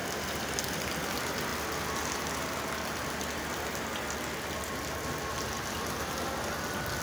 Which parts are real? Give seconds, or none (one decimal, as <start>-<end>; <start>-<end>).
0.0-7.0